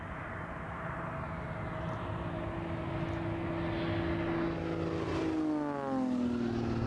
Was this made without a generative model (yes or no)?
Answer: yes